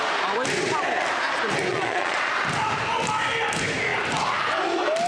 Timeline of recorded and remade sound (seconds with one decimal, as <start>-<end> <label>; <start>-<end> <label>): 0.0-1.7 recorded; 1.7-2.3 remade; 2.3-5.1 recorded